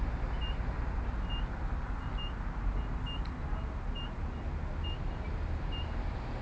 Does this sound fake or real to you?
real